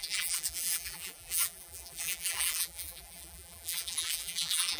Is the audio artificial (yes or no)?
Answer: yes